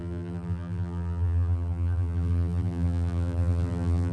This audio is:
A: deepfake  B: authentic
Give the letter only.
A